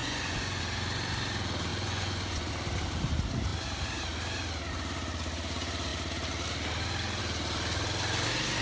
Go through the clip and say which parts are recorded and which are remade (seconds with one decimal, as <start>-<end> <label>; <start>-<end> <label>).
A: 0.0-0.6 remade; 0.6-1.7 recorded; 1.7-2.5 remade; 2.5-8.6 recorded